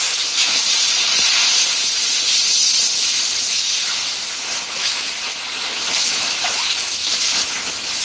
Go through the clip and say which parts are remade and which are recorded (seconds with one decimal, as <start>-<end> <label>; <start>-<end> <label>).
0.0-0.6 remade; 0.6-3.5 recorded; 3.5-8.0 remade